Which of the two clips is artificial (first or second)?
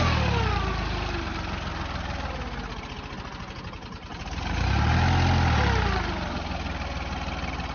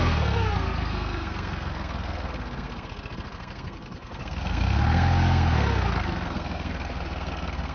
second